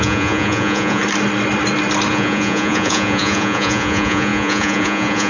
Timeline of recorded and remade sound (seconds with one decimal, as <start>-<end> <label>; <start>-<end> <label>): 0.0-1.0 remade; 1.0-2.1 recorded; 2.1-5.3 remade